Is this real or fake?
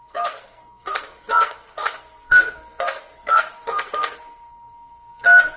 fake